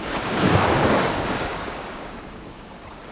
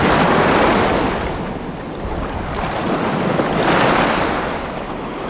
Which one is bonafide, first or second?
second